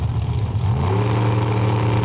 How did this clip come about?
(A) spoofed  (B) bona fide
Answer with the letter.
B